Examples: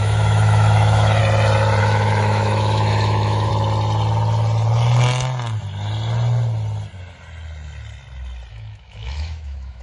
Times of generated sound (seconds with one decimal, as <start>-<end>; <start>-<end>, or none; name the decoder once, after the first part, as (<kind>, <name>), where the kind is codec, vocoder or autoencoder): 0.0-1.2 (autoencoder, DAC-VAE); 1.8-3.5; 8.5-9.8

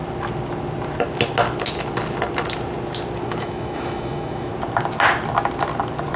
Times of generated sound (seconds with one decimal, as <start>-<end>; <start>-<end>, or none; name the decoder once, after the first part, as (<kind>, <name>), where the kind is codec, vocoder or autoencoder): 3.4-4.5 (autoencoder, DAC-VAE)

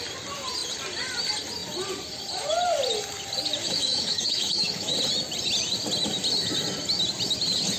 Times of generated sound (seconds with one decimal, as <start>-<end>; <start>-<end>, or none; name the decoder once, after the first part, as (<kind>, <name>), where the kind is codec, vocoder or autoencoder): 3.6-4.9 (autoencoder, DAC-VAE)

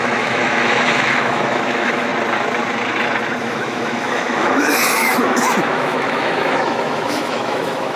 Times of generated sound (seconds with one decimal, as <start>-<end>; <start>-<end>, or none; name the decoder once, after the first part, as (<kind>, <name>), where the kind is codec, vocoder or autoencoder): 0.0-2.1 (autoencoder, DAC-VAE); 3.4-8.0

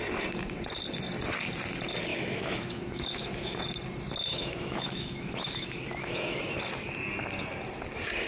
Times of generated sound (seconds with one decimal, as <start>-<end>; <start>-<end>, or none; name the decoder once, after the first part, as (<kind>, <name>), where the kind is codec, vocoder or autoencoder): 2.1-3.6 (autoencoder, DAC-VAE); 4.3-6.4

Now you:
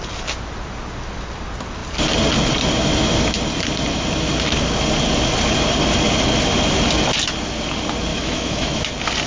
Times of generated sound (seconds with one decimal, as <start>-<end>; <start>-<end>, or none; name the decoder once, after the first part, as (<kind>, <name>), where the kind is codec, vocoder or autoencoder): 8.1-8.9 (autoencoder, DAC-VAE)

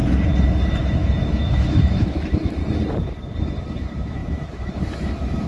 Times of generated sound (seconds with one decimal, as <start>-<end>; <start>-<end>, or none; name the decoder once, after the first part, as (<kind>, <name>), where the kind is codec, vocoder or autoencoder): 0.8-2.6 (autoencoder, DAC-VAE); 3.6-5.5

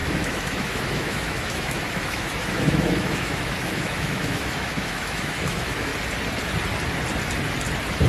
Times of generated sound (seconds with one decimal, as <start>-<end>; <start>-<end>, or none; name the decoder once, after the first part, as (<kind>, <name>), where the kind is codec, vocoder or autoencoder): 0.0-5.9 (autoencoder, DAC-VAE)